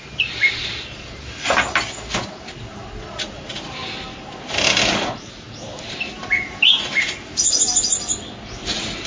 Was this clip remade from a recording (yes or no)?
no